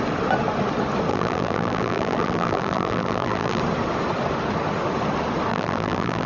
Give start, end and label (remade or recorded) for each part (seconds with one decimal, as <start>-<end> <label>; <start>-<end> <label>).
0.0-1.1 recorded; 1.1-3.6 remade; 3.6-5.5 recorded; 5.5-6.3 remade